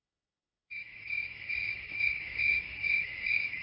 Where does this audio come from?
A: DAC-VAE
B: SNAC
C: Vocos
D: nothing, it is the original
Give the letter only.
A